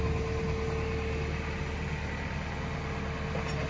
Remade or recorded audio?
recorded